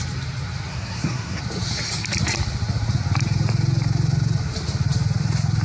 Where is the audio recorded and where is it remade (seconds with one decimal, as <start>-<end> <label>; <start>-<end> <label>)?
0.0-0.7 recorded; 0.7-1.4 remade; 1.4-5.6 recorded